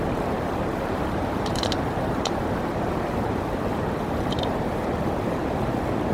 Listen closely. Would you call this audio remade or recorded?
remade